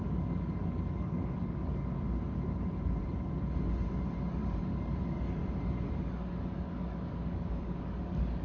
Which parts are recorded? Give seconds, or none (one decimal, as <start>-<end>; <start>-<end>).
1.8-4.3; 5.4-5.9